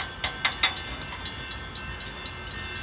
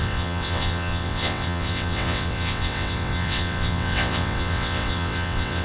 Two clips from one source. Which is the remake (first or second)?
second